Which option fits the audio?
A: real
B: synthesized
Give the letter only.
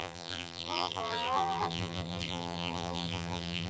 B